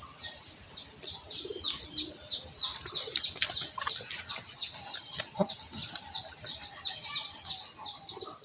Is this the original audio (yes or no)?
yes